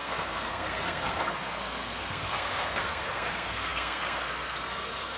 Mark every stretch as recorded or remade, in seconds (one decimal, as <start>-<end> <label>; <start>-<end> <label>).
0.0-5.2 remade